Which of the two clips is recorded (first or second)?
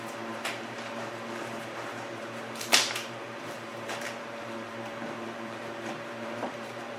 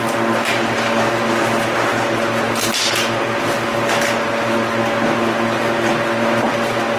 second